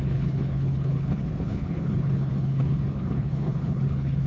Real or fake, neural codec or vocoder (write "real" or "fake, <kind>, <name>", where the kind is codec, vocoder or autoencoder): fake, codec, HILCodec